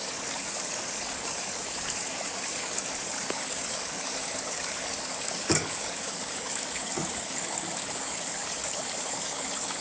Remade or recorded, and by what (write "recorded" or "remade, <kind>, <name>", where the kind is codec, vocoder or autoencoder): remade, codec, DAC